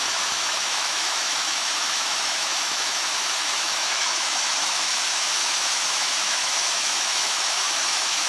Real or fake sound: fake